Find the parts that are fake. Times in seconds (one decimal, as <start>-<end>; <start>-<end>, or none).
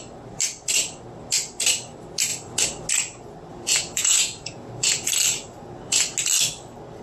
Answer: 3.5-5.1